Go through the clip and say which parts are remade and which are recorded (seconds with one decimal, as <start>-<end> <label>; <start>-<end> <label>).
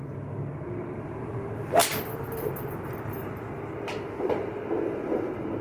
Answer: 0.0-1.8 recorded; 1.8-2.5 remade; 2.5-5.6 recorded